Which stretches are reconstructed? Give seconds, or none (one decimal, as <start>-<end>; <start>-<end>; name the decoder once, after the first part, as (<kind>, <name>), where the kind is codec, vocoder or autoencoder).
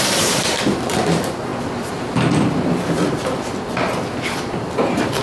0.0-1.5 (vocoder, BigVGAN v2); 4.6-5.2